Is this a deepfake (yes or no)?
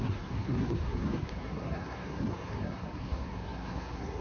yes